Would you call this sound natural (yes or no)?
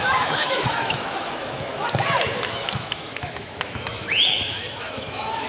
no